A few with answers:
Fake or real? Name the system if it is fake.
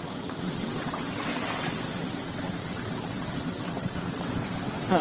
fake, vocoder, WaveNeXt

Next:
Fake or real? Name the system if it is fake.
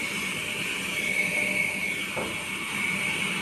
real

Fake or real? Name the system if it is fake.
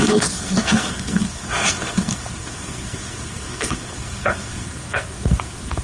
fake, codec, SNAC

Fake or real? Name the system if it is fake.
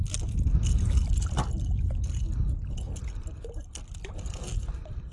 real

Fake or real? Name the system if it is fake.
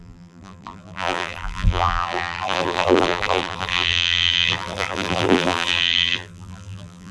fake, vocoder, BigVGAN v2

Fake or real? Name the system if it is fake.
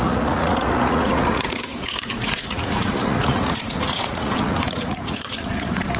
fake, vocoder, Vocos